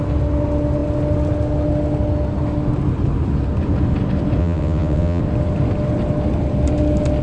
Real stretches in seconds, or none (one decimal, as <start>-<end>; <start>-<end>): 0.0-4.4; 5.2-7.2